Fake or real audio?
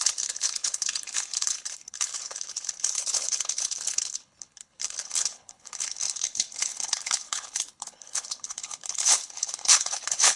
fake